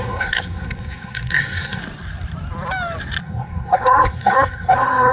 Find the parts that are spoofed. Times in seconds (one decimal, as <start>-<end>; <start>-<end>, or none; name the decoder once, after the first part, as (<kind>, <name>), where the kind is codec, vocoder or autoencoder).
0.0-1.8 (codec, SNAC); 3.2-5.1